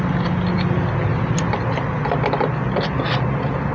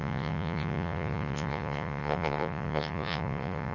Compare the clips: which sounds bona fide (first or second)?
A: first